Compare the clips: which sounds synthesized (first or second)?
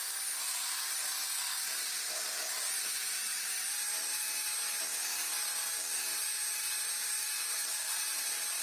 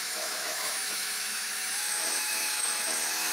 second